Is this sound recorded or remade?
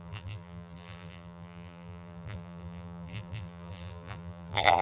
remade